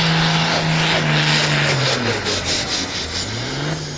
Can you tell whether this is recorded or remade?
recorded